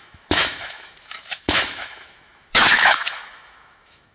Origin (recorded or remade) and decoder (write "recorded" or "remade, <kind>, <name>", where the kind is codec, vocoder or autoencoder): remade, autoencoder, DAC-VAE